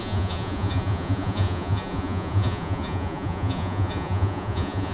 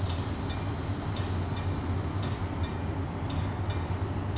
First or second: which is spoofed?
first